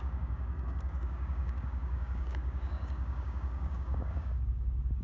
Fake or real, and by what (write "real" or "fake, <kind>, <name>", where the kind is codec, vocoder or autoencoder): fake, codec, DAC